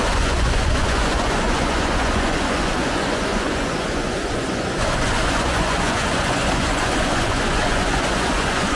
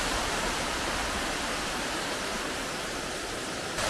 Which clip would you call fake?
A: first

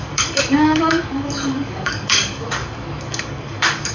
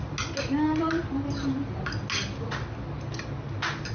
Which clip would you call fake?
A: first